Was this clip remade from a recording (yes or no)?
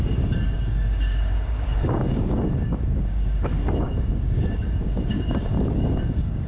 yes